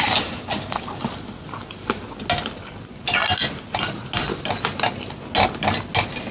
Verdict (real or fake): real